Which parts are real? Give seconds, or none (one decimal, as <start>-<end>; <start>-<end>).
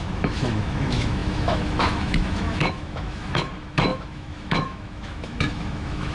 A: none